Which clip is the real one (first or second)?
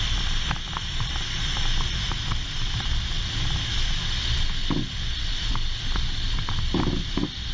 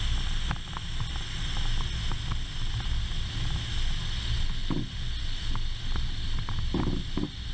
second